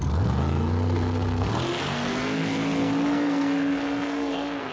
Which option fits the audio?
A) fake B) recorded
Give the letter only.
A